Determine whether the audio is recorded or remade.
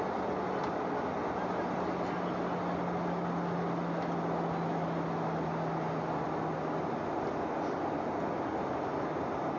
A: recorded